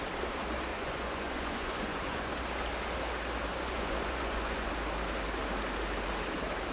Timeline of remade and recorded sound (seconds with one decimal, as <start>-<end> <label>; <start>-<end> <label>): 0.0-0.7 recorded; 0.7-2.3 remade; 2.3-3.5 recorded; 3.5-4.7 remade; 4.7-6.7 recorded

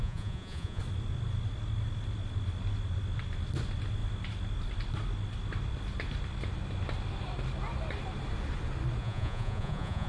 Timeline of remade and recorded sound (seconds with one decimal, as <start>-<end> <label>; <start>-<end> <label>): 0.0-0.8 remade; 0.8-9.0 recorded; 9.0-10.1 remade

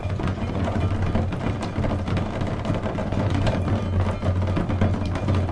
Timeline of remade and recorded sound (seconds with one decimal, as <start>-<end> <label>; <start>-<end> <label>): 0.0-0.8 remade; 0.8-3.0 recorded; 3.0-3.5 remade; 3.5-5.5 recorded